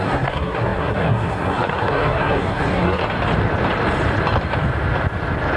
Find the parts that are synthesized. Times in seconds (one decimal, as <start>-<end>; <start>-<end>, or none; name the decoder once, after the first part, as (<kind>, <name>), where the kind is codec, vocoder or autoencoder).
0.0-3.0 (codec, SNAC)